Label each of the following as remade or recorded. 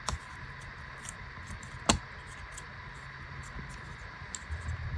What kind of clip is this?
recorded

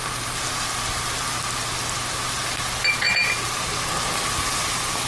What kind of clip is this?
recorded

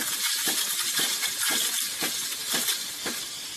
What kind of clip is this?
recorded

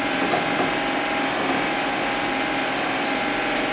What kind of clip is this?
recorded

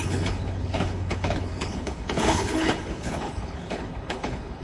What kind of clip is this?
remade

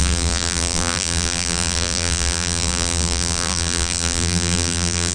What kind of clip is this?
remade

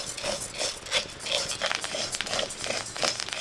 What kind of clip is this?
recorded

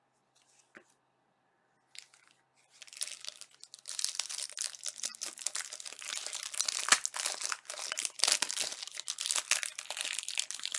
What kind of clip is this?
recorded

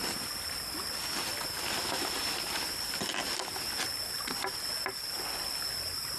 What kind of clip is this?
recorded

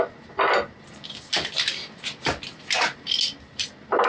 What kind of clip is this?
recorded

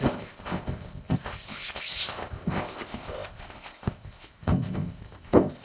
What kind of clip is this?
remade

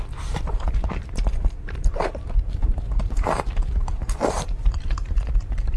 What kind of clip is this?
remade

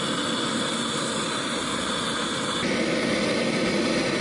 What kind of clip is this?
recorded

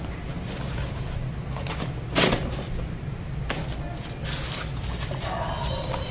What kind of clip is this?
recorded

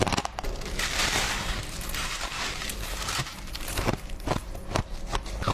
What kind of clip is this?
remade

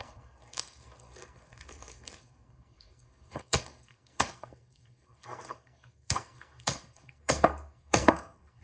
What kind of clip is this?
remade